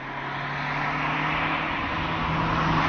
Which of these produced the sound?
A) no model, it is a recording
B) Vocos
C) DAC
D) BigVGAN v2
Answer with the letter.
A